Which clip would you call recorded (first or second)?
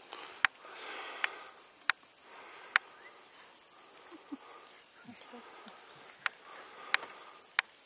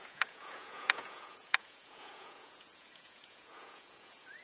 first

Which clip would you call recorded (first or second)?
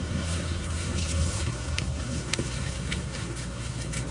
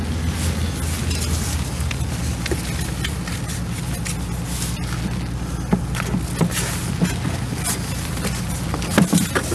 second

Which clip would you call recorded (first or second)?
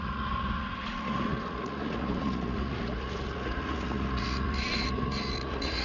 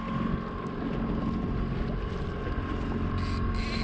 second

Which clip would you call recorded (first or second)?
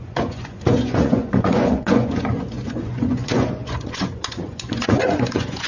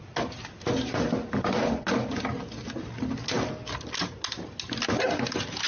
second